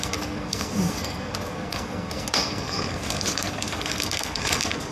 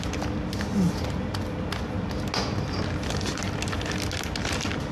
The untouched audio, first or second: second